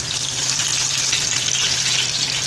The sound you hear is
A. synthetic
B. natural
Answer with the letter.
B